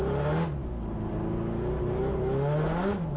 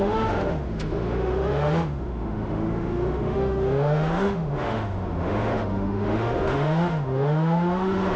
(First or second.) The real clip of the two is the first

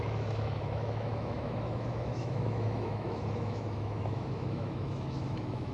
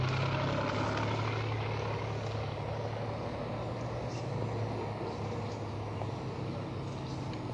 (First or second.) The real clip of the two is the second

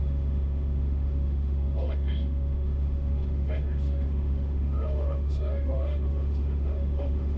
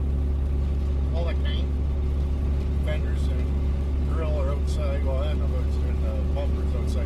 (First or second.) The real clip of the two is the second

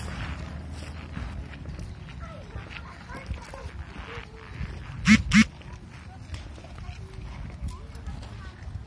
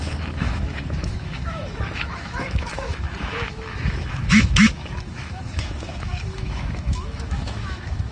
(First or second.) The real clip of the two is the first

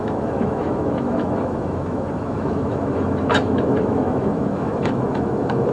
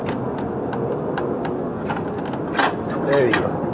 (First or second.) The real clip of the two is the second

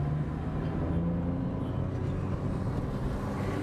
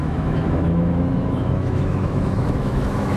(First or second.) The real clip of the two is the first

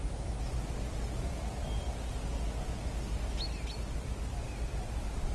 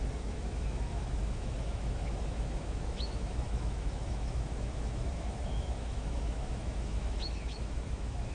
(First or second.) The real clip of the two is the first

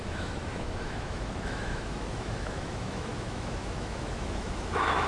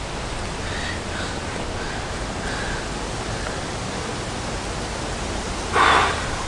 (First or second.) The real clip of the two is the second